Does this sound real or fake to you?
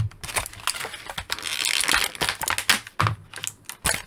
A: real